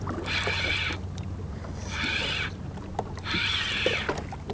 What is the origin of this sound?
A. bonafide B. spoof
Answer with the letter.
A